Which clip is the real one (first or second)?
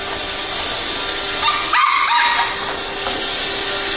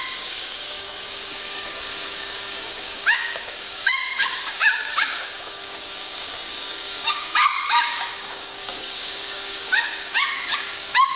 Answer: first